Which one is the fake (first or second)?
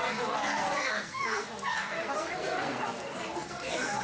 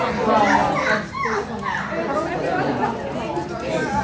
first